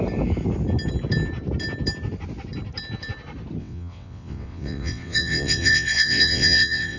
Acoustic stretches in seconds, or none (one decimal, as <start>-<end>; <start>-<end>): 0.0-3.6